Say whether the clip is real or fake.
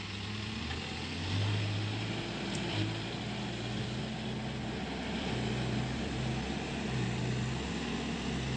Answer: real